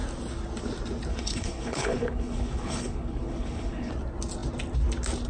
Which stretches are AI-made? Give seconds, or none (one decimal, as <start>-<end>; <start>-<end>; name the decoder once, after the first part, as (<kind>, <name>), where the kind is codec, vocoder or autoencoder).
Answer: 1.1-3.9 (codec, HILCodec)